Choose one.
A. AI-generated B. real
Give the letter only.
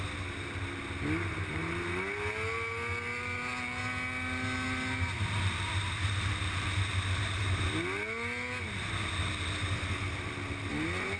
B